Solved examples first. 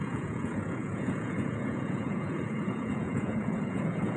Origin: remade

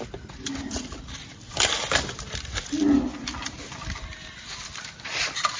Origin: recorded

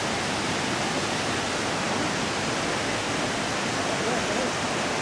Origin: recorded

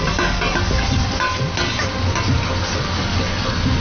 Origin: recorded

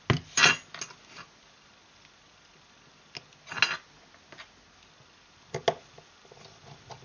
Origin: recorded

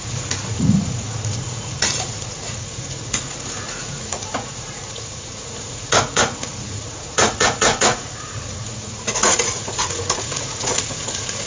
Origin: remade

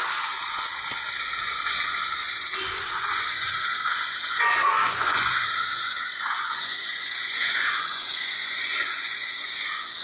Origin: remade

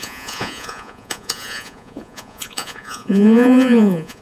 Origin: remade